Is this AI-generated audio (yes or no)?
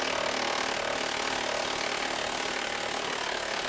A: no